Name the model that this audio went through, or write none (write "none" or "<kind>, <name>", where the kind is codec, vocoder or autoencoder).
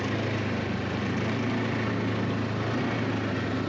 none